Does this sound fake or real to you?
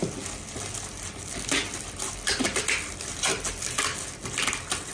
real